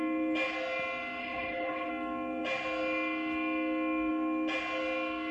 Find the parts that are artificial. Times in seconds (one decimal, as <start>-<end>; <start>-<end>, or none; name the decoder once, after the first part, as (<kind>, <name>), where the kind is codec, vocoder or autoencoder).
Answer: 1.2-1.9 (codec, HILCodec)

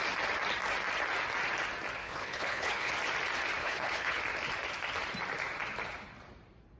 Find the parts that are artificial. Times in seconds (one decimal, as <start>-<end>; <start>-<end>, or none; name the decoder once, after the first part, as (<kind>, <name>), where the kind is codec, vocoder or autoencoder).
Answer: 2.0-2.9 (codec, HILCodec); 3.6-4.2

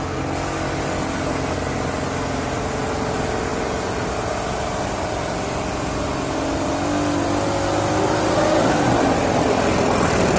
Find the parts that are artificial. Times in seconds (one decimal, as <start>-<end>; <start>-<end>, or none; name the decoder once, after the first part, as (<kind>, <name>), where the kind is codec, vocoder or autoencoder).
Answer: none

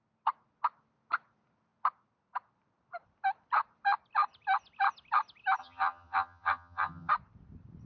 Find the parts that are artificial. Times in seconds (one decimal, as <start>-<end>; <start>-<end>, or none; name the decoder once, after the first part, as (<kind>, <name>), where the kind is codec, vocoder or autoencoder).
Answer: 5.6-7.1 (vocoder, HiFi-GAN)

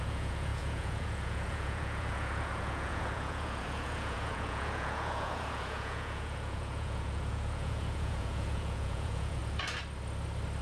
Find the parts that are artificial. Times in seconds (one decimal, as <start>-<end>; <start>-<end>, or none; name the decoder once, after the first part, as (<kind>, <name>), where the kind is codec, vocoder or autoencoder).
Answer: 0.0-9.4 (vocoder, Vocos)

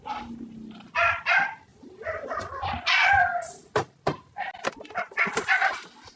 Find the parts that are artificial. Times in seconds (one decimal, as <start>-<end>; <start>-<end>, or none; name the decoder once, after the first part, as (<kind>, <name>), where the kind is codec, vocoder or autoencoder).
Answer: none